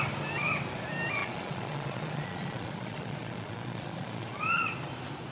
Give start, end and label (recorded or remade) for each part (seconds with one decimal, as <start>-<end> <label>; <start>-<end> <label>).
0.0-1.2 recorded; 1.2-4.4 remade; 4.4-5.3 recorded